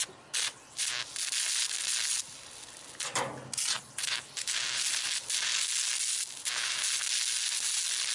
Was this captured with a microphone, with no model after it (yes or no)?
yes